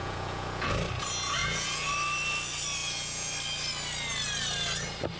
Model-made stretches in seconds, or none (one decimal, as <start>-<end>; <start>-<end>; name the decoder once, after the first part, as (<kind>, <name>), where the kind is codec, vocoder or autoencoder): 0.0-0.7 (vocoder, Vocos); 1.4-1.9; 2.8-3.3